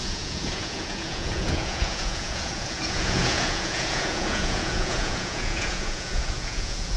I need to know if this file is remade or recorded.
remade